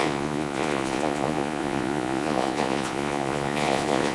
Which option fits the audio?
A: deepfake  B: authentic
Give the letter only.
A